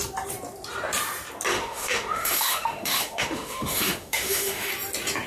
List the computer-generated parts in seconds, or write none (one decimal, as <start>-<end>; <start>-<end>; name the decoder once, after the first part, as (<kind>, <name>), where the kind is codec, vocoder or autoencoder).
1.5-4.7 (autoencoder, DAC-VAE)